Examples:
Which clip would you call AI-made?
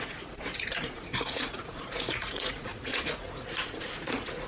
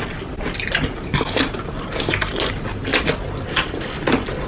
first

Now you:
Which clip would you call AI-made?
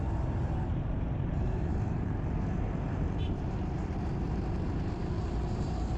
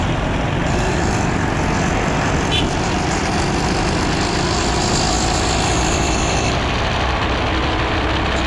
first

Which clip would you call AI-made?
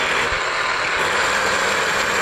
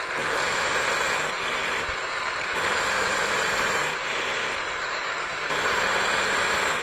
second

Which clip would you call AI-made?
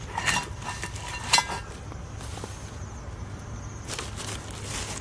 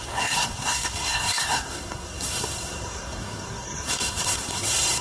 second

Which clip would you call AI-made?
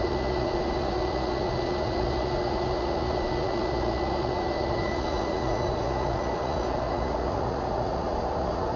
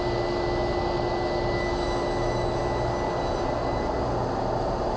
first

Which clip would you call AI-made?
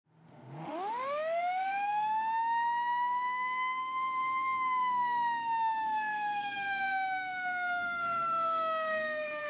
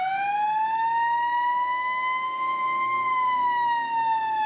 first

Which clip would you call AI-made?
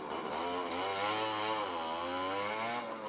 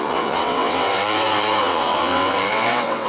second